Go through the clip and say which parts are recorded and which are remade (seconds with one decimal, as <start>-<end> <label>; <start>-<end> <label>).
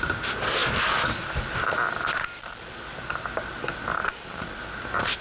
0.0-5.2 recorded